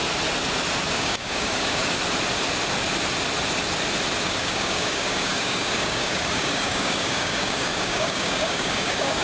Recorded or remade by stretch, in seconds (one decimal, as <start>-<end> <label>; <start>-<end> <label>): 0.0-0.9 recorded; 0.9-1.8 remade; 1.8-4.2 recorded; 4.2-9.2 remade